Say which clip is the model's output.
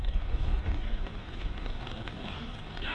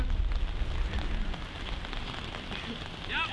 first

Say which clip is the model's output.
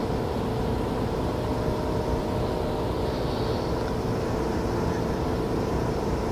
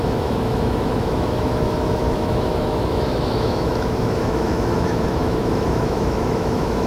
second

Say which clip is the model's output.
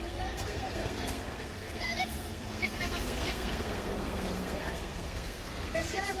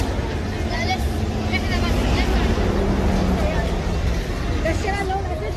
first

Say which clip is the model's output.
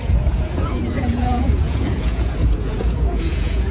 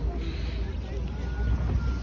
first